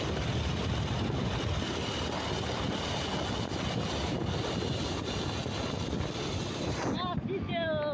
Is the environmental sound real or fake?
real